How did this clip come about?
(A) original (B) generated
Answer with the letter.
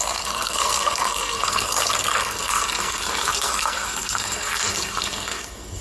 B